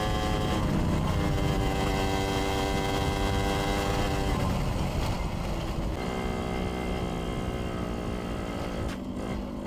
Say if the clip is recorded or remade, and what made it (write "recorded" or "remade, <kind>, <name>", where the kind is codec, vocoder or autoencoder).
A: recorded